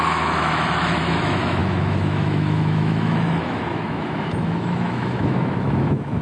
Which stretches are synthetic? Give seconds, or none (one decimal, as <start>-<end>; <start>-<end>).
0.0-6.2